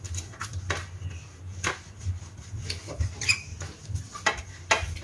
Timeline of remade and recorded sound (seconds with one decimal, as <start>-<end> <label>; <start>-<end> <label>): 0.0-5.0 recorded

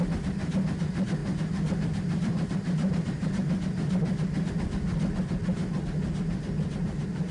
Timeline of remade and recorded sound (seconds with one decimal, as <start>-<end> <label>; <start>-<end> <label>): 0.0-1.2 recorded; 1.2-4.5 remade; 4.5-7.3 recorded

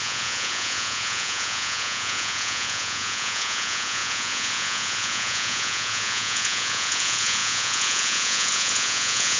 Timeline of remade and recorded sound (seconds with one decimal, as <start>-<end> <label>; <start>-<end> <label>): 0.0-9.4 remade

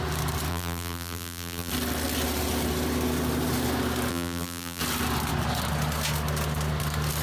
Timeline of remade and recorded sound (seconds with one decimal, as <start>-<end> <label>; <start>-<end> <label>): 0.0-0.5 recorded; 0.5-1.7 remade; 1.7-4.1 recorded; 4.1-4.8 remade; 4.8-7.2 recorded

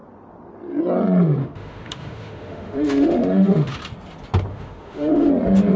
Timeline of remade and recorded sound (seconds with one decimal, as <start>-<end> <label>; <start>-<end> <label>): 0.0-1.4 recorded; 1.4-3.8 remade; 3.8-4.5 recorded; 4.5-5.3 remade; 5.3-5.8 recorded

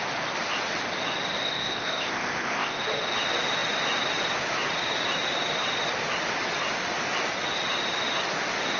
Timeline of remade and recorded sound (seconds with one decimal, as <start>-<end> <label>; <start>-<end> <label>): 0.0-1.4 recorded; 1.4-2.8 remade; 2.8-8.8 recorded

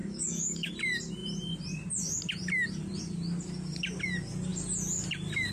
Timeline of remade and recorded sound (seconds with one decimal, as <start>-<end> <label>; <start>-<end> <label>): 0.0-0.7 remade; 0.7-5.5 recorded